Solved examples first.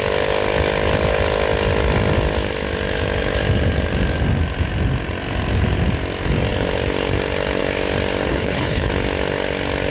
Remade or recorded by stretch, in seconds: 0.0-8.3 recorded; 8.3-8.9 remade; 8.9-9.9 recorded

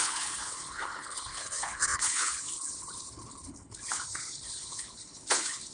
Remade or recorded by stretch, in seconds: 0.0-5.7 remade